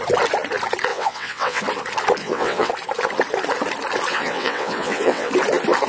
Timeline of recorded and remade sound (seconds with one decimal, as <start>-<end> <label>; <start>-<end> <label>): 0.0-0.9 recorded; 0.9-1.6 remade; 1.6-2.2 recorded; 2.2-2.7 remade; 2.7-4.1 recorded; 4.1-5.3 remade; 5.3-5.9 recorded